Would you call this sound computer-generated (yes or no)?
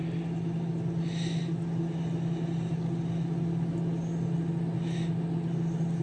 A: no